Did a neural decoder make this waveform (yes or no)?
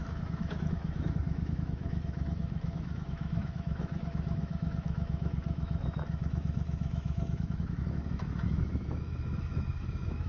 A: yes